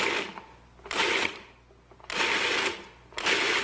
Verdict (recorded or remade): recorded